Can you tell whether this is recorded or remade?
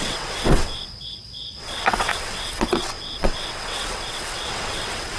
remade